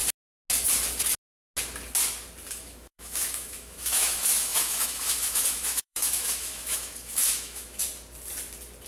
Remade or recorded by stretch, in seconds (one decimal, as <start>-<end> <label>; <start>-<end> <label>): 0.0-2.5 recorded; 2.5-7.8 remade; 7.8-8.9 recorded